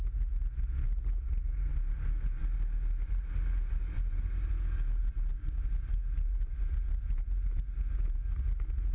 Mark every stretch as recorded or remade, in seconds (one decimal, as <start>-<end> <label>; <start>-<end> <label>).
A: 0.0-5.0 recorded; 5.0-6.6 remade; 6.6-8.9 recorded